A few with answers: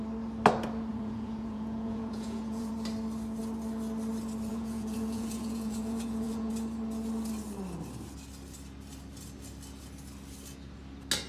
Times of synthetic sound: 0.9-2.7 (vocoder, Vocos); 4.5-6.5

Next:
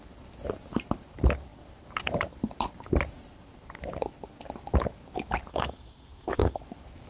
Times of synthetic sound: 5.5-6.6 (codec, SNAC)

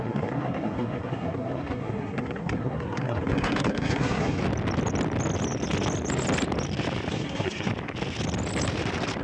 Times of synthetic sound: 0.0-4.4 (codec, SNAC); 7.1-7.7

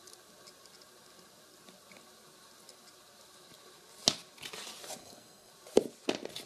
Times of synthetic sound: 5.0-5.5 (codec, SNAC)

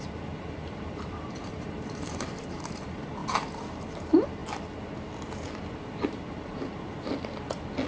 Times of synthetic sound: 0.0-4.4 (vocoder, BigVGAN v2); 5.8-7.1

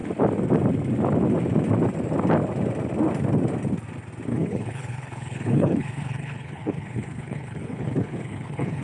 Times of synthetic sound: 4.3-8.8 (codec, HILCodec)

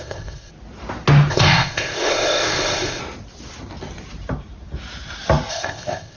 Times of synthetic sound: 0.0-0.5 (codec, ZipCodec); 1.3-3.0; 5.5-6.2

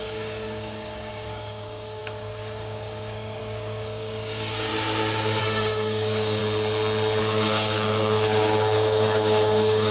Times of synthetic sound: 0.0-4.7 (codec, DAC); 5.4-6.4; 7.2-9.9